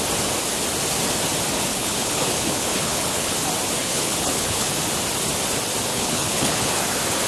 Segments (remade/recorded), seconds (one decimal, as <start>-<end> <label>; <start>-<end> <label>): 0.0-1.7 recorded; 1.7-3.3 remade; 3.3-3.8 recorded; 3.8-4.7 remade; 4.7-5.9 recorded; 5.9-6.7 remade; 6.7-7.3 recorded